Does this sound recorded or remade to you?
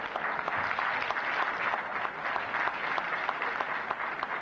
recorded